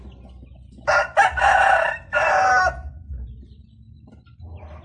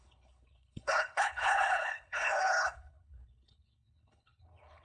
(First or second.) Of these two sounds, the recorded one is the first